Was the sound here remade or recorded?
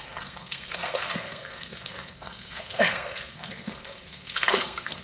remade